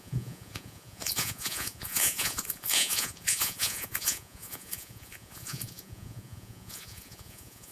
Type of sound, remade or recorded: remade